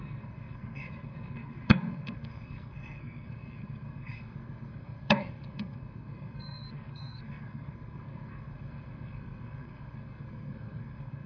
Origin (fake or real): fake